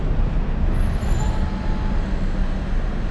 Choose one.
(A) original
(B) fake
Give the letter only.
A